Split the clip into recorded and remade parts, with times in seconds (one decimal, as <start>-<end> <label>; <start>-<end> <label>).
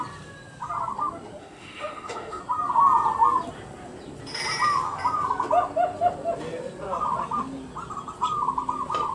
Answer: 0.0-1.4 recorded; 1.4-2.4 remade; 2.4-9.1 recorded